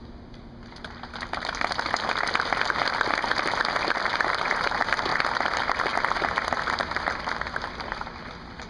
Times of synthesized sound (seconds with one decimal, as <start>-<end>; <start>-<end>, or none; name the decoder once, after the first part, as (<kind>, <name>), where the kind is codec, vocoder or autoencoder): 4.1-5.1 (vocoder, BigVGAN v2)